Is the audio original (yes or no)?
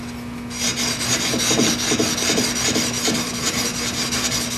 yes